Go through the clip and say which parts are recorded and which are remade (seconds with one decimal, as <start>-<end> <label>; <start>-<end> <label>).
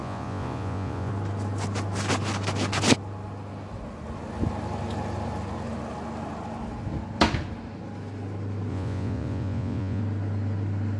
0.0-1.1 remade; 1.1-8.7 recorded; 8.7-10.0 remade; 10.0-11.0 recorded